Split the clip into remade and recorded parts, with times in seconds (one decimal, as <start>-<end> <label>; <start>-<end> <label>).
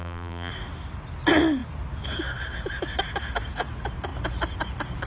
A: 0.0-0.5 remade; 0.5-5.1 recorded